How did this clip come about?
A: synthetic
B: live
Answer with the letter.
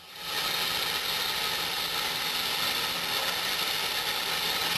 B